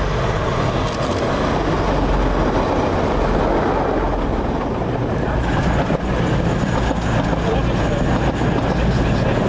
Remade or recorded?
recorded